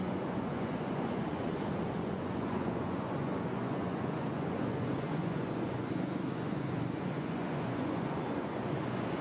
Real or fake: fake